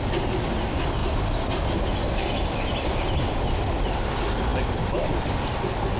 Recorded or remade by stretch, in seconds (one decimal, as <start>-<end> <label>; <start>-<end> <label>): 0.0-6.0 recorded